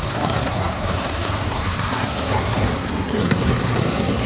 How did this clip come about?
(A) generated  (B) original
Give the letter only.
A